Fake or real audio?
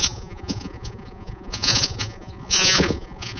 fake